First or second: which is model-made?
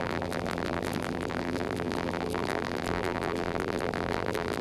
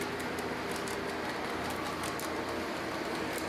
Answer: first